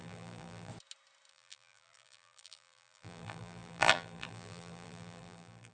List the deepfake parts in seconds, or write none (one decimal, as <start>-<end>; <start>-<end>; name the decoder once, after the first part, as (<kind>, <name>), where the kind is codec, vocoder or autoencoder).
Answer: 0.0-0.7 (vocoder, BigVGAN v2); 1.3-5.7